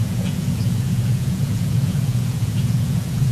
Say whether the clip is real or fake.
fake